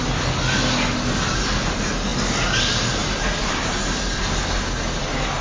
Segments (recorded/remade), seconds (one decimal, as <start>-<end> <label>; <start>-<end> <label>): 0.0-5.4 recorded